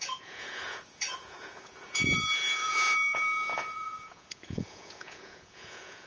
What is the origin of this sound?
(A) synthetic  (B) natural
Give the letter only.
A